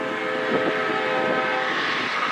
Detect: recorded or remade recorded